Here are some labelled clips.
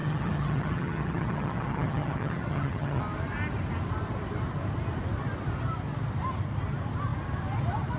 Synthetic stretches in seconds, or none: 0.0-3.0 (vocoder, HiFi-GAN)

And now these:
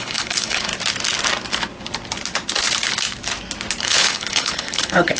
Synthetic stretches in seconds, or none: 0.0-0.7 (codec, HILCodec); 3.8-5.2

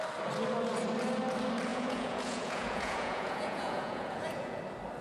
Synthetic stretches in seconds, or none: 1.7-4.6 (vocoder, Vocos)

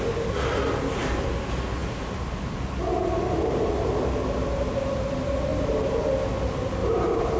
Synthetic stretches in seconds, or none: 5.5-6.3 (vocoder, BigVGAN v2); 6.8-7.4

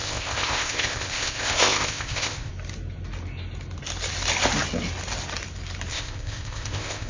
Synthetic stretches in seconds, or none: 0.0-2.5 (codec, ZipCodec); 5.9-7.1

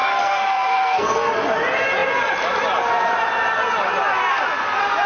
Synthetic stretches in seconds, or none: 0.0-1.3 (codec, SNAC)